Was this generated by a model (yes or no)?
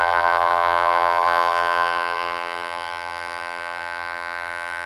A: yes